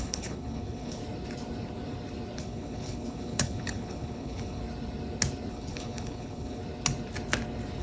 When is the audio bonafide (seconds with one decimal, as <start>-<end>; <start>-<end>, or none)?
1.0-2.4; 4.6-5.5; 6.6-7.8